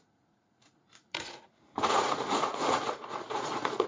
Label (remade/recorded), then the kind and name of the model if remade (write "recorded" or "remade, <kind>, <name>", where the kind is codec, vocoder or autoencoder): remade, vocoder, Vocos